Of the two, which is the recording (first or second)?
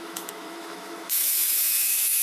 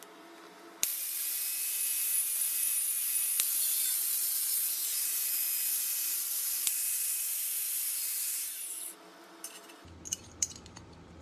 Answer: second